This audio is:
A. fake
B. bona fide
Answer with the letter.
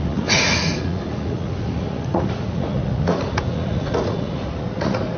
A